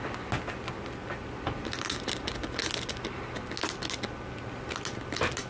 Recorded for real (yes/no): yes